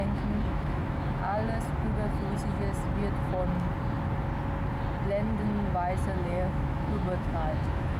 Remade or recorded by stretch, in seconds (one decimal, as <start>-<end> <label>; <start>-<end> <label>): 0.0-1.4 remade; 1.4-6.2 recorded; 6.2-8.0 remade